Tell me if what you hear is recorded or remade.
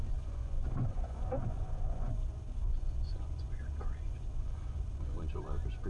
remade